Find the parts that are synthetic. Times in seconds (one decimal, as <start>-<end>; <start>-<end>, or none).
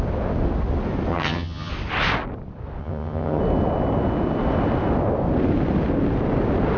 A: 1.1-1.7; 2.8-3.4